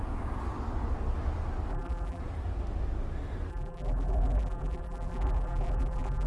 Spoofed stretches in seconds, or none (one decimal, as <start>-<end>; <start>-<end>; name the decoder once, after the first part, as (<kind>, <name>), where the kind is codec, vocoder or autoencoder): 1.7-2.2 (vocoder, BigVGAN v2); 3.5-6.3